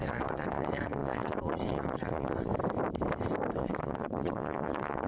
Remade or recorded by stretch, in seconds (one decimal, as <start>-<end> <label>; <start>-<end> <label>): 0.0-2.5 remade; 2.5-3.6 recorded; 3.6-5.1 remade